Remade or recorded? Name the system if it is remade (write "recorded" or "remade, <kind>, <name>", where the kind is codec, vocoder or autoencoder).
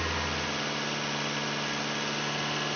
recorded